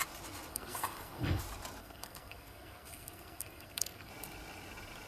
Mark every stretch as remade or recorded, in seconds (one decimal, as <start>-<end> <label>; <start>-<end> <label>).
0.0-0.5 recorded; 0.5-1.4 remade; 1.4-1.8 recorded; 1.8-4.1 remade; 4.1-5.1 recorded